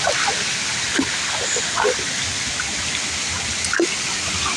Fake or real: real